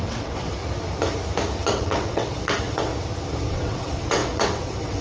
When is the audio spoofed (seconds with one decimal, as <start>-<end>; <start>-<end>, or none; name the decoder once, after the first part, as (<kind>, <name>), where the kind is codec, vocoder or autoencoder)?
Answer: 0.0-0.6 (vocoder, WaveNeXt); 1.7-2.9; 3.5-5.0